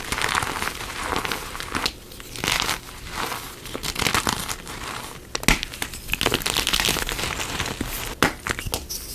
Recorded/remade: recorded